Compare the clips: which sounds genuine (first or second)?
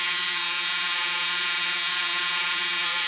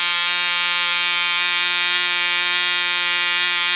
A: second